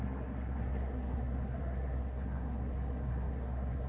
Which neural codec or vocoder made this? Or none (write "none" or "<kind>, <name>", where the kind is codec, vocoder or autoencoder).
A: codec, SNAC